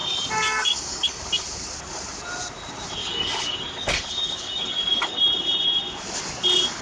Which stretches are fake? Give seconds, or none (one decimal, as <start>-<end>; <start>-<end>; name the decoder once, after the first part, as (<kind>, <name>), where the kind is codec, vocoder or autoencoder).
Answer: 0.0-1.2 (codec, DAC); 3.0-5.2